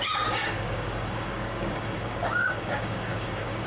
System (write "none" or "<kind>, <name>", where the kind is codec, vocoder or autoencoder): codec, DAC